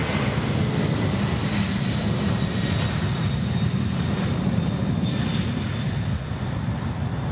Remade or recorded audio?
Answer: recorded